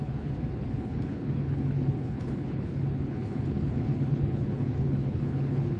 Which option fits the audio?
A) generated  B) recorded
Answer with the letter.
A